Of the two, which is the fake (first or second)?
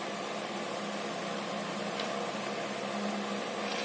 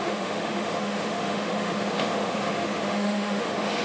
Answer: second